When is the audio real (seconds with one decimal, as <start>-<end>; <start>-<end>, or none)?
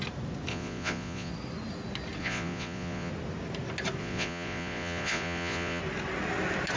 0.0-0.5; 1.3-2.2; 3.1-4.0; 5.8-6.8